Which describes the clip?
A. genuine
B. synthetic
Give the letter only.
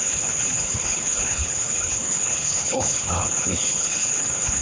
B